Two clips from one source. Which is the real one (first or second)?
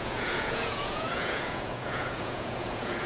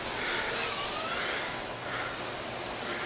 second